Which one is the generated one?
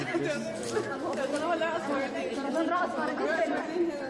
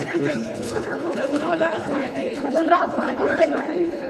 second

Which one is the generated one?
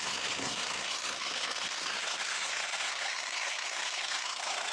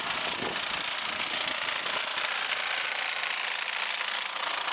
first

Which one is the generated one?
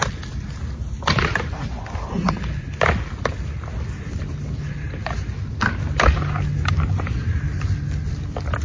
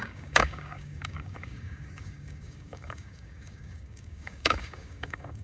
second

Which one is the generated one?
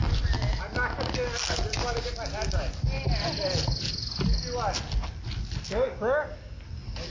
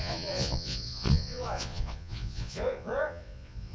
second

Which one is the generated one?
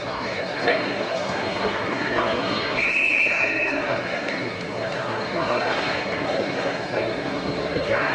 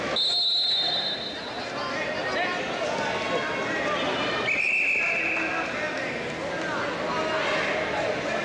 first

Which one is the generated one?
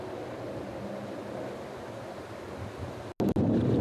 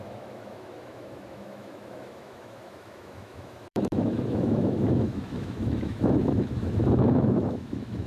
second